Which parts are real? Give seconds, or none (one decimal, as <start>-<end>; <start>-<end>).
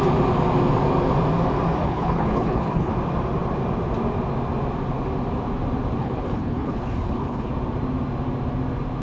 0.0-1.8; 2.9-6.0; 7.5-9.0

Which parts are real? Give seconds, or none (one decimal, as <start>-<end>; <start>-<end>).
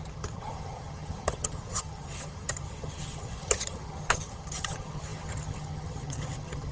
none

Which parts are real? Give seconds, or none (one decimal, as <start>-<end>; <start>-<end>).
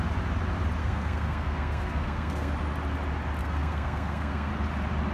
0.0-0.8; 2.5-3.4; 4.5-5.1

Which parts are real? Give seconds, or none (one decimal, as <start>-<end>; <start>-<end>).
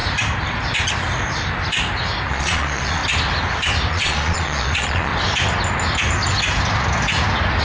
0.0-2.3; 3.0-3.9; 5.1-7.6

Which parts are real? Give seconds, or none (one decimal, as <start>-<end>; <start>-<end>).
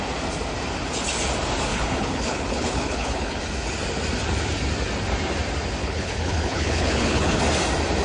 0.0-1.7; 3.4-5.8; 7.4-8.0